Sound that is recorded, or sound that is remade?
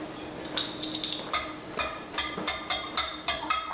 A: recorded